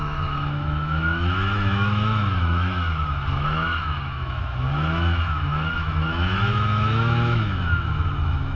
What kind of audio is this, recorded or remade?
remade